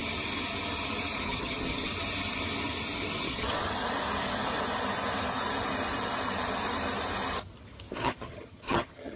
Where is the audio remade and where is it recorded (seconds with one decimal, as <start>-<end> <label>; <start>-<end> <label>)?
0.0-1.2 recorded; 1.2-1.9 remade; 1.9-3.2 recorded; 3.2-3.8 remade; 3.8-7.9 recorded; 7.9-9.2 remade